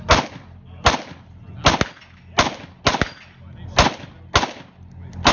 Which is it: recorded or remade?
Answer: recorded